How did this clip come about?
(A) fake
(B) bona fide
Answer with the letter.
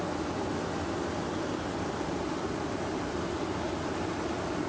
B